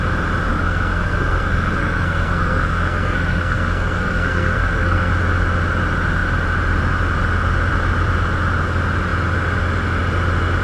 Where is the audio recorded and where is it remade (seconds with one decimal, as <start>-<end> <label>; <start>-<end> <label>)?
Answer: 0.0-0.5 recorded; 0.5-5.1 remade; 5.1-10.6 recorded

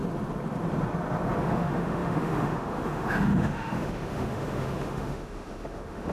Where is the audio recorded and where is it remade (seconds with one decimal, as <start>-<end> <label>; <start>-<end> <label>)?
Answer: 0.0-1.4 recorded; 1.4-6.1 remade

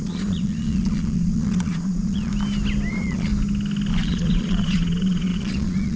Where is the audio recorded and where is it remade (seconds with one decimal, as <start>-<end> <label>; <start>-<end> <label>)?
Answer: 0.0-2.3 remade; 2.3-2.9 recorded; 2.9-3.3 remade; 3.3-3.9 recorded; 3.9-6.0 remade

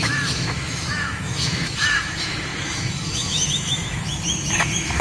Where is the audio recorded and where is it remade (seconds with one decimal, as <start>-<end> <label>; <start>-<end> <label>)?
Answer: 0.0-5.0 remade